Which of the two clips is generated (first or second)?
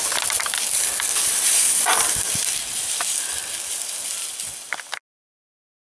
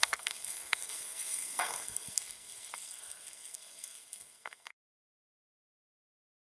second